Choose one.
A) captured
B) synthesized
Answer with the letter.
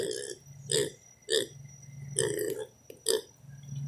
A